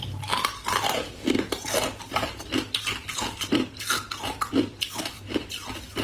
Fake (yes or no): yes